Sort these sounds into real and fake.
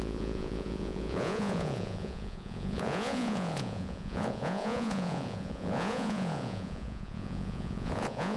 fake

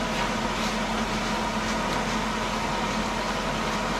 real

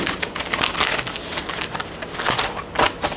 real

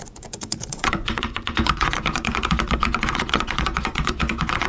fake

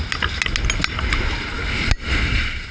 real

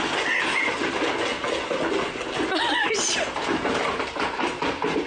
real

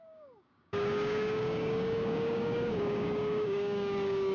fake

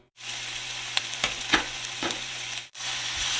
fake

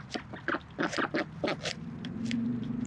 fake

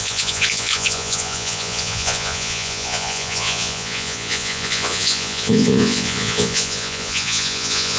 fake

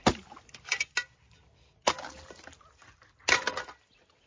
real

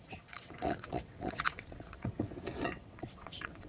fake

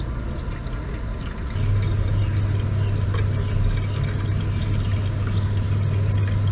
real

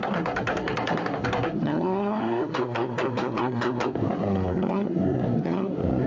fake